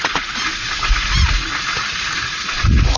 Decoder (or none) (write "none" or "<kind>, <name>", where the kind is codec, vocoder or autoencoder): vocoder, Vocos